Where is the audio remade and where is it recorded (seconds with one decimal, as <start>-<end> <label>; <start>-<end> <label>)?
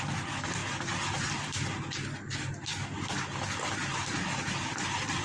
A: 0.0-5.2 recorded